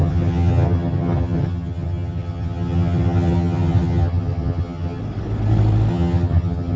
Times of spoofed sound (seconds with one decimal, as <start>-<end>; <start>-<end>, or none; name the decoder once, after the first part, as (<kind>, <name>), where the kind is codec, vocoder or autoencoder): 0.0-5.0 (vocoder, HiFi-GAN); 5.9-6.8